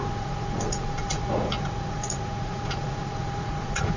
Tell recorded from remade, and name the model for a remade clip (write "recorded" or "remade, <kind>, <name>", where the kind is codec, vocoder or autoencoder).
remade, vocoder, Vocos